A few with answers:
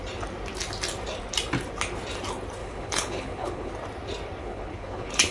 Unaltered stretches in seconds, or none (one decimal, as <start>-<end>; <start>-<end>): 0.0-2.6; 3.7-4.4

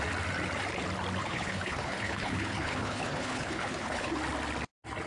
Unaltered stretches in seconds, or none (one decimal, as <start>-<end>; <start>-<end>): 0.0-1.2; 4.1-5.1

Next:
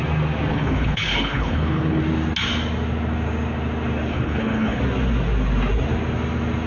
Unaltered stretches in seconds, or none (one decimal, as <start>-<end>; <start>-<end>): 0.0-0.5; 2.0-4.1; 4.8-6.7

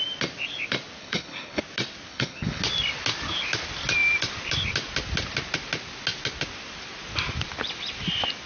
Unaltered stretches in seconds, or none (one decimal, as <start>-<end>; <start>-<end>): 0.0-1.0; 1.6-2.1; 2.6-8.5

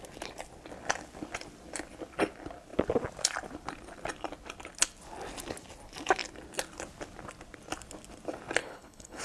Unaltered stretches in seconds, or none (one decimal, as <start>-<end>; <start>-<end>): 0.0-8.6

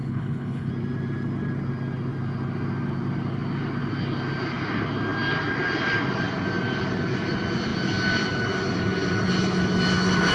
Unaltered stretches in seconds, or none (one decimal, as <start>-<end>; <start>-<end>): 0.7-10.3

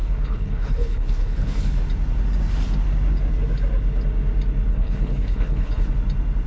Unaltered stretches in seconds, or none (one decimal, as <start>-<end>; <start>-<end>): 1.8-4.7; 5.9-6.5